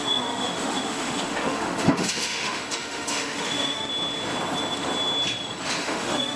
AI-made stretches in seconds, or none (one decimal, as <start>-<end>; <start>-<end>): 0.0-3.9; 5.8-6.4